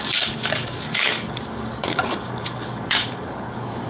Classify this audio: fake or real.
fake